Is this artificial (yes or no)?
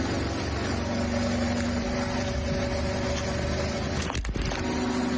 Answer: no